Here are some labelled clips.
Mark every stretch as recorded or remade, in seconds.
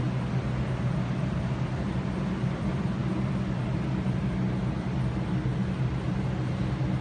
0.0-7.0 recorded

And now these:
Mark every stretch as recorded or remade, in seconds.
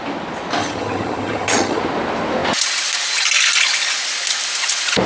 0.0-0.6 recorded; 0.6-1.8 remade; 1.8-5.1 recorded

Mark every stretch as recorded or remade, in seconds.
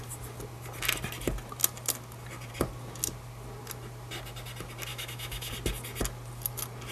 0.0-4.9 recorded; 4.9-5.5 remade; 5.5-6.9 recorded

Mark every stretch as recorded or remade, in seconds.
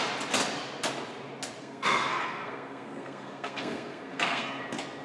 0.0-1.6 recorded; 1.6-4.6 remade; 4.6-5.0 recorded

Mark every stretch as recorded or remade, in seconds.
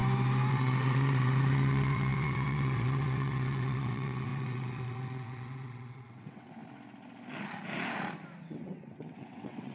0.0-0.5 recorded; 0.5-6.6 remade; 6.6-8.4 recorded; 8.4-9.7 remade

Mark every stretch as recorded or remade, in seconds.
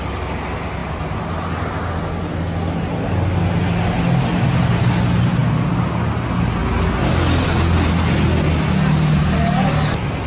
0.0-10.3 recorded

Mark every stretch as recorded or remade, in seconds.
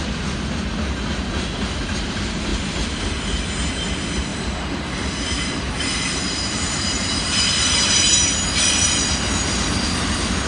0.0-2.5 recorded; 2.5-3.0 remade; 3.0-4.3 recorded; 4.3-8.3 remade; 8.3-10.5 recorded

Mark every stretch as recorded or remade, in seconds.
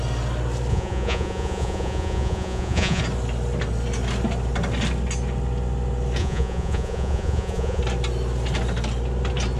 0.0-0.7 recorded; 0.7-3.0 remade; 3.0-6.2 recorded; 6.2-7.8 remade; 7.8-9.6 recorded